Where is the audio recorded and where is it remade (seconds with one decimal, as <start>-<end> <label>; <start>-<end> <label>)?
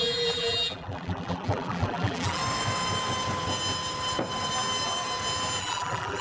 0.0-2.4 remade; 2.4-5.6 recorded; 5.6-6.2 remade